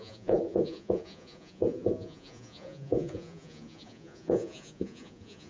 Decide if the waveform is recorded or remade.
remade